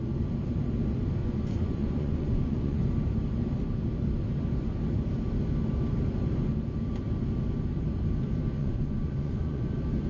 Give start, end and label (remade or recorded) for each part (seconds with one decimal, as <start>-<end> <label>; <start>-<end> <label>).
0.0-1.2 recorded; 1.2-2.8 remade; 2.8-8.6 recorded; 8.6-9.7 remade; 9.7-10.1 recorded